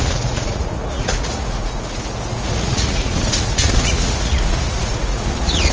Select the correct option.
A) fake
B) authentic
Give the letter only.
A